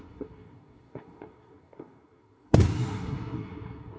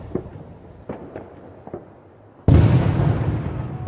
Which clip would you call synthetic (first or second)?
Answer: first